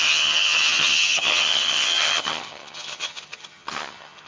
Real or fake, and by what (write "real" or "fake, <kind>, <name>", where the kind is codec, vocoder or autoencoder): fake, vocoder, HiFi-GAN